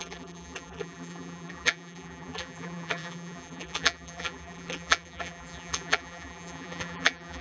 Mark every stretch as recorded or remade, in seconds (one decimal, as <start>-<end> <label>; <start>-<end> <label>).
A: 0.0-7.4 remade